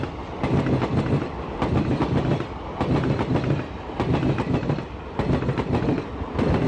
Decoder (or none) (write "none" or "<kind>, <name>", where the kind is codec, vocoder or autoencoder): none